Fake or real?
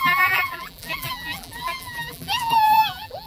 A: fake